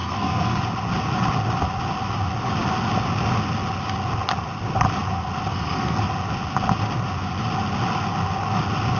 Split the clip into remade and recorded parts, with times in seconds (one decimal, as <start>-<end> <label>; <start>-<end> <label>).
0.0-0.6 remade; 0.6-5.5 recorded; 5.5-6.0 remade; 6.0-9.0 recorded